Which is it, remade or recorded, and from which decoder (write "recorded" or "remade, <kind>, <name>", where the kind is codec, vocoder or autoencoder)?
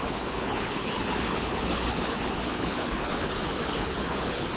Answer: remade, codec, HILCodec